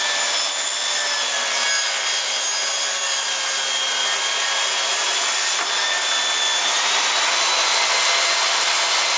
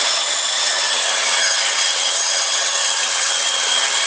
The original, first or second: first